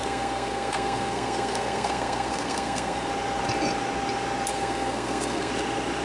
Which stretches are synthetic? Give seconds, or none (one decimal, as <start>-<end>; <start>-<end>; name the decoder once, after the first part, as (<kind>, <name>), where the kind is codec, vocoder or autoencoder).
0.0-3.1 (codec, SNAC); 4.5-5.5